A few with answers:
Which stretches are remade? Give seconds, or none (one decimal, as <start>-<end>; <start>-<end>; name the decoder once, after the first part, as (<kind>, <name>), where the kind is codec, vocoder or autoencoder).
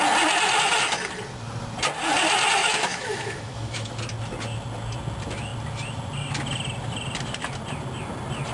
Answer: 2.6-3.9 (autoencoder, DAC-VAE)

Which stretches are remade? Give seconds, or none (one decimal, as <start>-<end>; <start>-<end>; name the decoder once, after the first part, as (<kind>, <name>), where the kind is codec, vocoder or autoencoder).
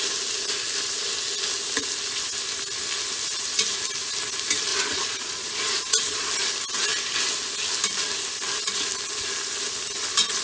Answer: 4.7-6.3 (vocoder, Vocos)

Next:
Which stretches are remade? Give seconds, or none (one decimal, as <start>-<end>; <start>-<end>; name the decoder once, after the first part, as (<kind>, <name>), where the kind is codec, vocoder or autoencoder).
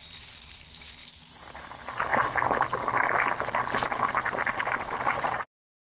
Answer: 1.0-1.7 (vocoder, BigVGAN v2)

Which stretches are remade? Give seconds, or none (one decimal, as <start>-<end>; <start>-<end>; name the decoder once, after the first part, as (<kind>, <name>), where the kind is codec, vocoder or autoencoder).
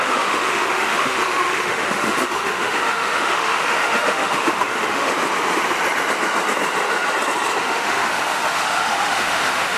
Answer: 0.0-5.1 (autoencoder, DAC-VAE); 7.6-9.8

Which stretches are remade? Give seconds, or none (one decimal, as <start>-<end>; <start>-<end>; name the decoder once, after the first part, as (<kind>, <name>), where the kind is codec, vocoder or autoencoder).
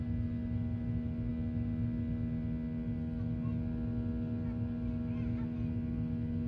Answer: none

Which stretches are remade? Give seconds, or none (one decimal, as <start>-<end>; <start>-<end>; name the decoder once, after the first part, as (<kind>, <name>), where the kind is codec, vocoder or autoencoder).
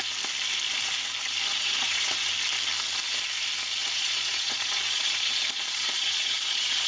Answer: 1.5-2.3 (vocoder, Vocos); 3.8-6.9